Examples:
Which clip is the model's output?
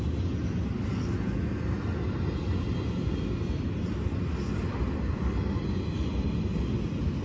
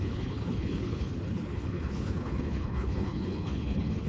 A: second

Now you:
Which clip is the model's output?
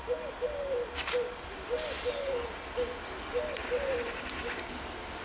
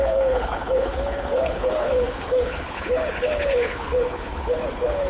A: second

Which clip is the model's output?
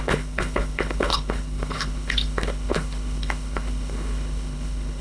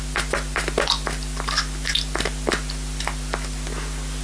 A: first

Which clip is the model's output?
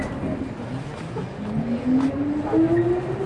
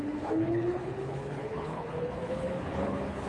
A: second